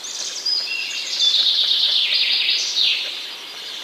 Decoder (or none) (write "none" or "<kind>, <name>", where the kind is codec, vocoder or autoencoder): none